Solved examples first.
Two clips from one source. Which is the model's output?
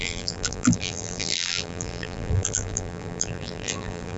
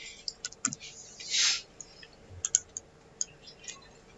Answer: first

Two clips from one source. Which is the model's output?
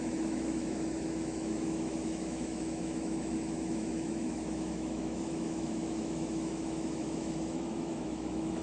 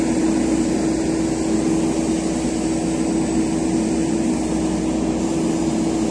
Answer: first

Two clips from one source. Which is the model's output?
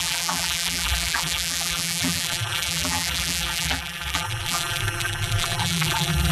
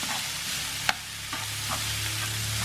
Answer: first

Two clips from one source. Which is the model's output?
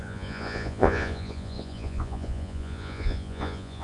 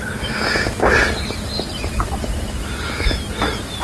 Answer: first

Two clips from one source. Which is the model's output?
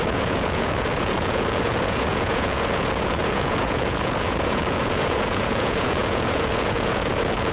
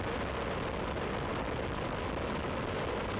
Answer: first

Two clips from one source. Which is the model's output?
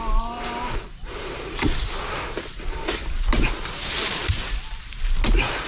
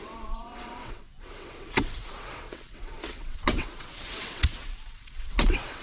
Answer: second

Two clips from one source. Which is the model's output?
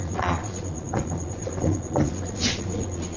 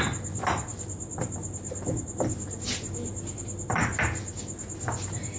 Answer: first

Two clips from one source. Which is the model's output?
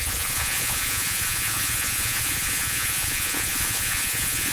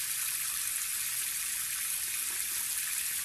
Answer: first